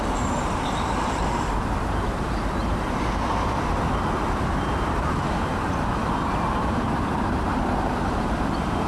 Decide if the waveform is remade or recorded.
remade